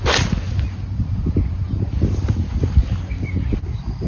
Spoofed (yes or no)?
no